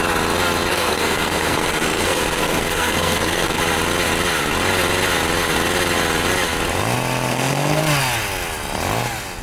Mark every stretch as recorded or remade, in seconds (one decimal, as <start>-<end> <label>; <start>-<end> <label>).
0.0-0.7 recorded; 0.7-3.6 remade; 3.6-7.3 recorded; 7.3-7.8 remade; 7.8-9.4 recorded